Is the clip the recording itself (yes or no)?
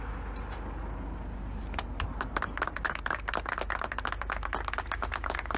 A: yes